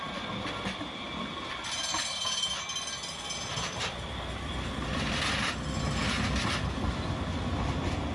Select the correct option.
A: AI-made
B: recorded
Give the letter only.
B